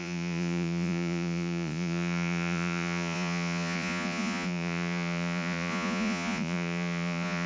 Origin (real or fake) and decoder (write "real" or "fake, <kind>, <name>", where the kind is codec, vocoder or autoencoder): fake, vocoder, Vocos